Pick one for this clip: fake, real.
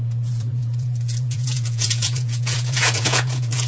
fake